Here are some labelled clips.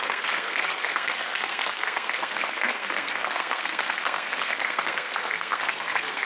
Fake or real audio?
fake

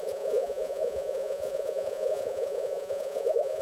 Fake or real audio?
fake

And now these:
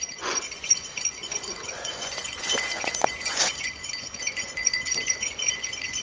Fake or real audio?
fake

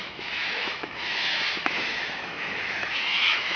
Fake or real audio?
fake